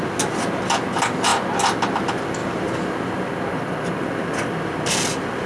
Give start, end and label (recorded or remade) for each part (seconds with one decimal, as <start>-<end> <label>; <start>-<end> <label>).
0.0-2.4 recorded; 2.4-5.5 remade